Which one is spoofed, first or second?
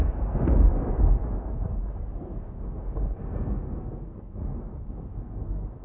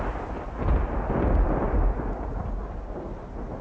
first